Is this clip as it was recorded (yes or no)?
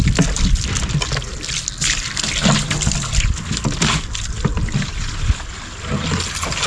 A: yes